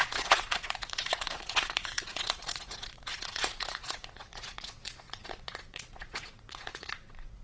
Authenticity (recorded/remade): remade